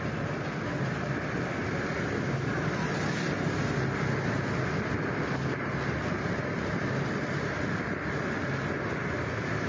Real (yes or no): yes